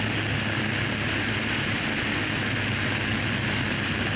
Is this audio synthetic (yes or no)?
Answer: no